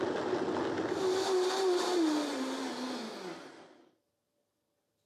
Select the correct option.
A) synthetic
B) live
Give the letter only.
B